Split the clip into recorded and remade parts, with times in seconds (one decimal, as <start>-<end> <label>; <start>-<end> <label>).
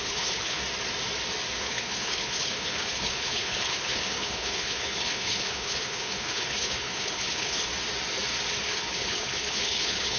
0.0-0.6 remade; 0.6-1.6 recorded; 1.6-7.7 remade; 7.7-8.6 recorded; 8.6-10.2 remade